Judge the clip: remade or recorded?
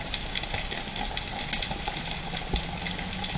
recorded